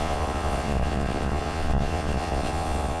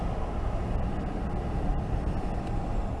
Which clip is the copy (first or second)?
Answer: first